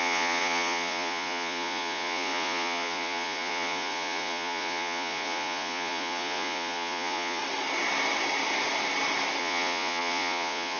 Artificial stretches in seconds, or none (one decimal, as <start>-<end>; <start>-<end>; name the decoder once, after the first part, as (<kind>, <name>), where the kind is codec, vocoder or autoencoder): 0.0-7.4 (vocoder, Vocos); 9.4-10.8